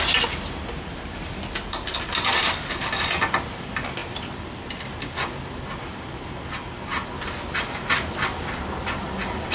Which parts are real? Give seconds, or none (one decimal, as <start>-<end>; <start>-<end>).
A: 0.0-9.5